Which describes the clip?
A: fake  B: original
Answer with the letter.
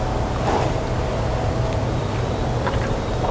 B